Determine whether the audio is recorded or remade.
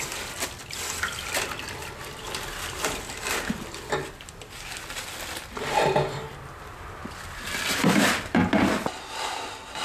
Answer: remade